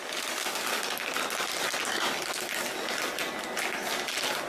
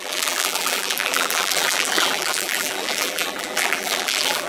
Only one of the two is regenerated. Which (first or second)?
second